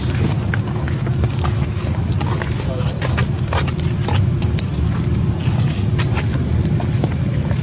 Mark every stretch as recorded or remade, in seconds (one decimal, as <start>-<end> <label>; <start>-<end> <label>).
0.0-3.2 recorded; 3.2-4.7 remade; 4.7-7.6 recorded